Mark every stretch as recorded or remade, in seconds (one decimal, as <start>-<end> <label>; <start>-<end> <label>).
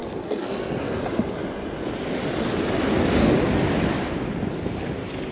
0.0-1.0 remade; 1.0-5.3 recorded